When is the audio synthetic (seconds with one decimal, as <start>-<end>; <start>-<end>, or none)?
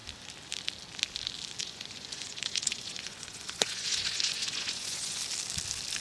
1.6-5.2